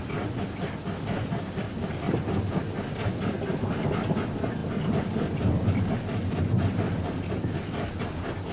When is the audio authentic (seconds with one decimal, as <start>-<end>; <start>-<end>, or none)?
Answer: 0.0-8.5